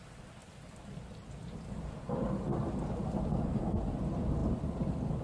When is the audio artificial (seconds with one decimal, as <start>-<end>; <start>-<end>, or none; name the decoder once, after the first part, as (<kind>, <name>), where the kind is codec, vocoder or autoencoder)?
3.3-3.8 (codec, SNAC)